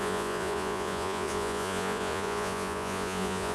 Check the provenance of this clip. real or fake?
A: fake